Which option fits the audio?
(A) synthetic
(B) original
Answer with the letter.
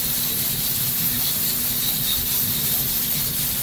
B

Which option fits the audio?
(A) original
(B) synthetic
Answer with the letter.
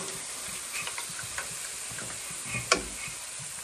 A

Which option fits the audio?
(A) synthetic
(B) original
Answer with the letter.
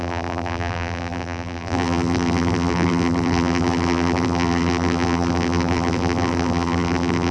A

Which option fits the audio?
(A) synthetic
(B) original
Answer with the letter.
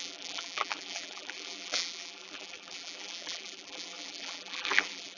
A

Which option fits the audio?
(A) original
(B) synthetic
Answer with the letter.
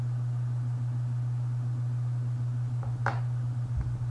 A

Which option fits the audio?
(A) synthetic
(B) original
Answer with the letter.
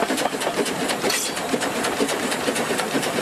A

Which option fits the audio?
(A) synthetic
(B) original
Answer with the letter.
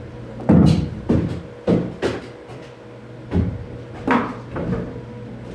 A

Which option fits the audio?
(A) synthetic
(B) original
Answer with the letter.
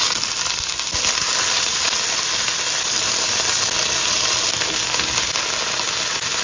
B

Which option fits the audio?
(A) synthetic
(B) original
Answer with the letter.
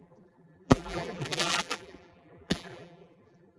A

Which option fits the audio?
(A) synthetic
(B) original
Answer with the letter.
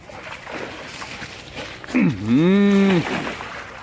B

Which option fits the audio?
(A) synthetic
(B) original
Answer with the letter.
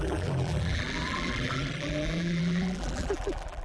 A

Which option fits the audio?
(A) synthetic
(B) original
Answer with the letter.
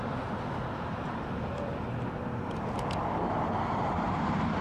B